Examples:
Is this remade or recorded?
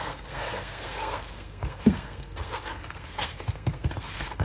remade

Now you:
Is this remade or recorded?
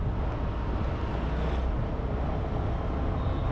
recorded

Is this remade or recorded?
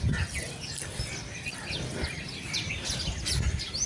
recorded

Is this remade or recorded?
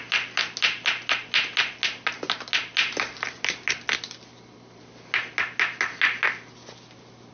recorded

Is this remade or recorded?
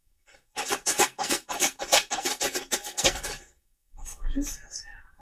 remade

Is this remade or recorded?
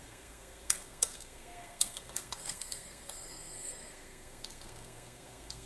remade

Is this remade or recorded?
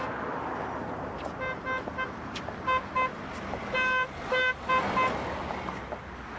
recorded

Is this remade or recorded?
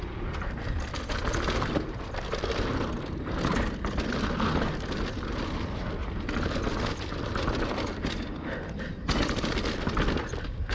recorded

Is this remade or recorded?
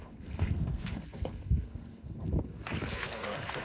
remade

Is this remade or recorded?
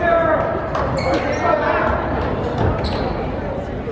recorded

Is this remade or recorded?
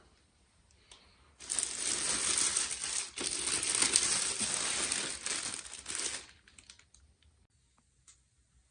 recorded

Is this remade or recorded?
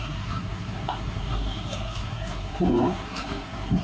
remade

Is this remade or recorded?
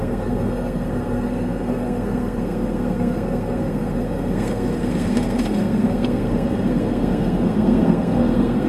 remade